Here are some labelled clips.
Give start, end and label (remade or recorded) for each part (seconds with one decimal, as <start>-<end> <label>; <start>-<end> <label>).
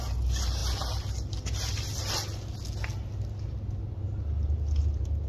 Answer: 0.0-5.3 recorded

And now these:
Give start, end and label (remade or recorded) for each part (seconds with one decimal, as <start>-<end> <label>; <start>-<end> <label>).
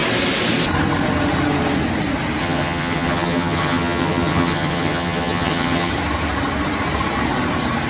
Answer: 0.0-2.4 recorded; 2.4-5.9 remade; 5.9-7.9 recorded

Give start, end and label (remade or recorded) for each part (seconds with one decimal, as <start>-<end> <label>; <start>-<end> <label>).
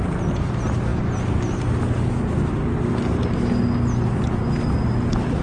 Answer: 0.0-5.4 recorded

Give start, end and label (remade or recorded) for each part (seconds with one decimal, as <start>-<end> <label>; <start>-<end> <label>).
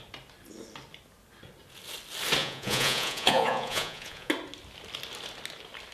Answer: 0.0-2.4 recorded; 2.4-4.3 remade; 4.3-5.9 recorded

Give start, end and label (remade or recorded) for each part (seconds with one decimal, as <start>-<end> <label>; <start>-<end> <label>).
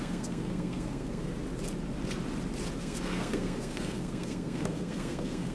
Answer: 0.0-1.3 remade; 1.3-2.8 recorded; 2.8-5.5 remade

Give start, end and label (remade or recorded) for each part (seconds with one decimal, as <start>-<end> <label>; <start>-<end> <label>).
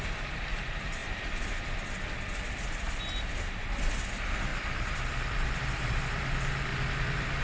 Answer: 0.0-1.0 recorded; 1.0-3.0 remade; 3.0-4.5 recorded; 4.5-5.6 remade; 5.6-7.4 recorded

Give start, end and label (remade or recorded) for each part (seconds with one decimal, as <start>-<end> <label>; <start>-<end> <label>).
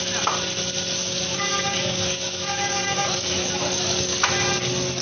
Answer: 0.0-1.3 recorded; 1.3-4.3 remade; 4.3-5.0 recorded